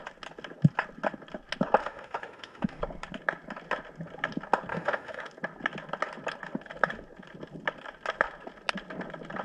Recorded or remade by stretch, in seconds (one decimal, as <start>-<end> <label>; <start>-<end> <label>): 0.0-1.8 recorded; 1.8-2.8 remade; 2.8-4.7 recorded; 4.7-5.2 remade; 5.2-9.4 recorded